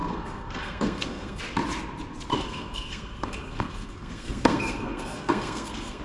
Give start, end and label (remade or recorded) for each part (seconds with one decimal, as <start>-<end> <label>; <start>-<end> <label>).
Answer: 0.0-1.4 remade; 1.4-2.3 recorded; 2.3-6.0 remade

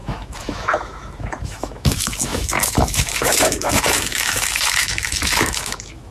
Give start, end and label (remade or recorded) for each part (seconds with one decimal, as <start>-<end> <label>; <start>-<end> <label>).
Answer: 0.0-6.1 remade